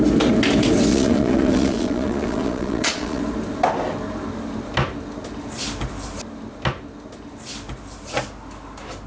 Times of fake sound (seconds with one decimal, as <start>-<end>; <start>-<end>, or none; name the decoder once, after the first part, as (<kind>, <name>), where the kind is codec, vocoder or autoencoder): 0.9-3.2 (vocoder, Vocos)